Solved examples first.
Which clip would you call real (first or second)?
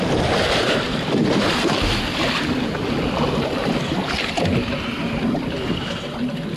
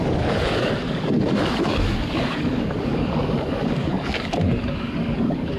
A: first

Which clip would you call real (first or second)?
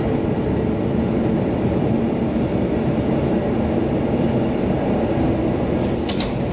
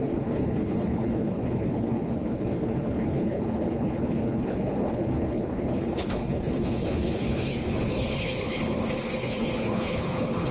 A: first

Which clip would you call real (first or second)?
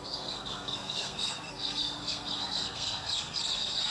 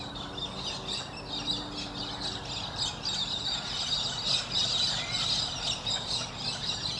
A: second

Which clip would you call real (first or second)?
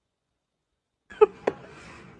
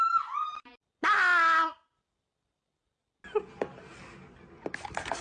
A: second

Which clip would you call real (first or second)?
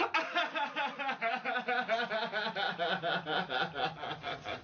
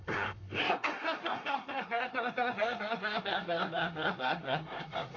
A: first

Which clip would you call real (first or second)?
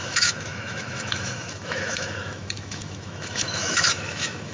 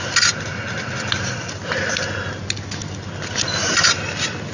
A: second